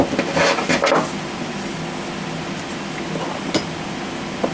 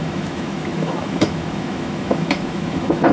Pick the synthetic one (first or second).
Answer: second